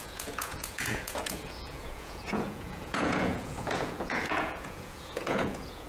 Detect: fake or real fake